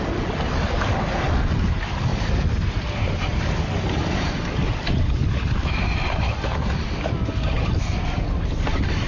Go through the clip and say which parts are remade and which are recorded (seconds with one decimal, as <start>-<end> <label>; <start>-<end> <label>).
0.0-9.1 recorded